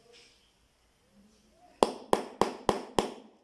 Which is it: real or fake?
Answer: real